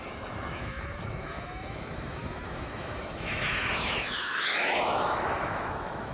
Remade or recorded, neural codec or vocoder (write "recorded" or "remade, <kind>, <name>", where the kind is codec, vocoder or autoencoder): remade, autoencoder, DAC-VAE